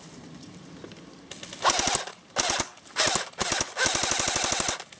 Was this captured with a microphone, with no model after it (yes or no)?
yes